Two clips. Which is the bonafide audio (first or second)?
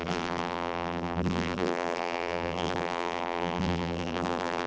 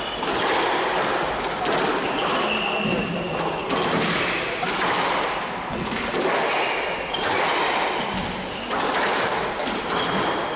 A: second